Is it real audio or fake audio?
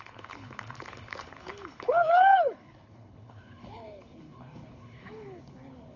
fake